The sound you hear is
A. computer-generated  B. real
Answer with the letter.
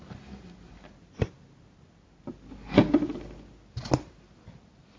B